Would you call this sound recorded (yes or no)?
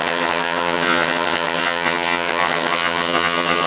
no